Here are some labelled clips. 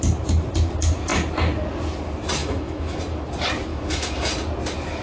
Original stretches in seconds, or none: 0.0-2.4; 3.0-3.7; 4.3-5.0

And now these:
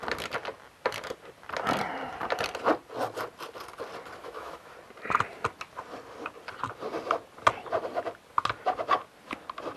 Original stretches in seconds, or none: 0.0-4.2; 4.7-9.8

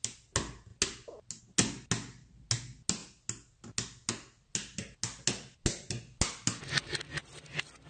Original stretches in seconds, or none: 0.0-7.9

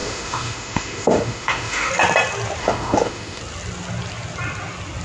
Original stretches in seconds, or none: 1.9-2.6; 3.4-5.0

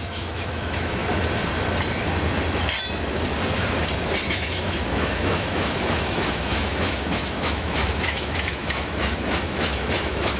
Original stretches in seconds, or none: 1.0-4.3

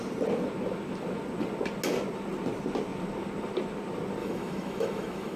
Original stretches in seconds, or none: 0.0-4.2

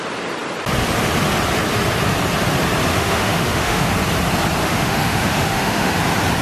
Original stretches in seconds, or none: 0.0-2.9; 3.9-4.6; 6.0-6.4

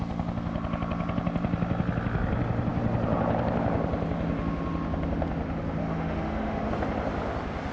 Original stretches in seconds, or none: 0.0-5.8; 6.7-7.7